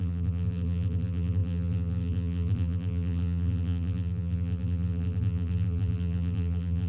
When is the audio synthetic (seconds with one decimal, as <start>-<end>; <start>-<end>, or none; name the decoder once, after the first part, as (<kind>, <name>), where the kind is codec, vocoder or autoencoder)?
0.0-6.9 (vocoder, BigVGAN v2)